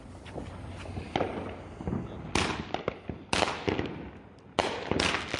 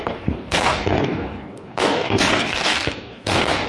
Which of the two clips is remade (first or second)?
second